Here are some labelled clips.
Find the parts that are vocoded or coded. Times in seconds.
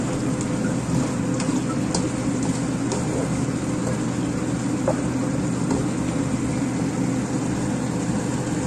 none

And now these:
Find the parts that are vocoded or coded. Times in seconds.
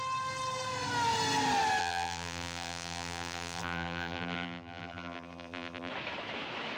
1.8-5.9 (vocoder, BigVGAN v2)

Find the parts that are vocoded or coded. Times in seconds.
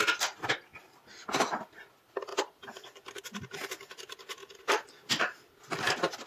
2.3-3.4 (vocoder, BigVGAN v2); 4.4-5.5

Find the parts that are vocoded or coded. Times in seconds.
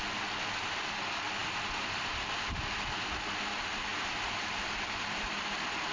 1.4-2.3 (vocoder, BigVGAN v2); 3.9-5.3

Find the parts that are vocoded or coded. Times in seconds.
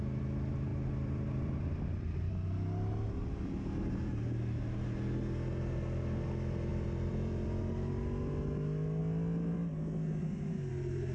0.7-2.3 (vocoder, BigVGAN v2); 6.7-7.6